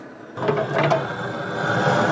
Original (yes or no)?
yes